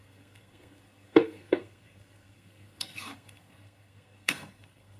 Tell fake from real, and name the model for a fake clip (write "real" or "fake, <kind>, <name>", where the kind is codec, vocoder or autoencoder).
fake, codec, SNAC